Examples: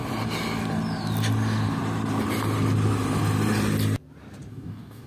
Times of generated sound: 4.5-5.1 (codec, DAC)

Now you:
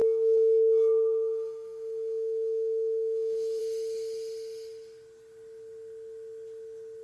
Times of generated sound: 0.0-3.6 (autoencoder, DAC-VAE)

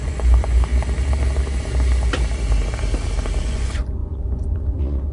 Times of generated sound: 0.0-0.7 (vocoder, Vocos); 3.4-5.1